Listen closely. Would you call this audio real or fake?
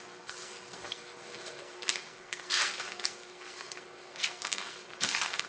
fake